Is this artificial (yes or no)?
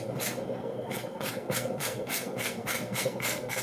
yes